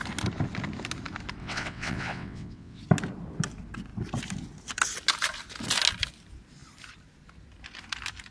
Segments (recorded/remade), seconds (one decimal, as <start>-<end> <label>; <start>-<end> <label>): 0.0-1.4 recorded; 1.4-2.8 remade; 2.8-8.3 recorded